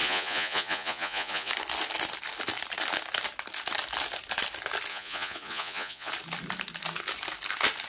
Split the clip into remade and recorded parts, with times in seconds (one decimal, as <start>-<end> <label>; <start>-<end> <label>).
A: 0.0-1.5 remade; 1.5-4.9 recorded; 4.9-6.1 remade; 6.1-7.9 recorded